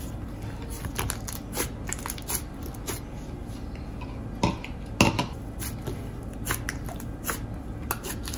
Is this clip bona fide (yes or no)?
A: yes